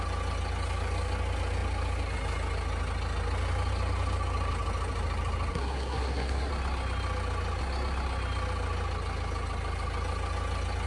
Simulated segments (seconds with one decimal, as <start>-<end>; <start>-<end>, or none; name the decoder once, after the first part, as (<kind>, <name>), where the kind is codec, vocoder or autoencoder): 5.5-6.5 (codec, SNAC)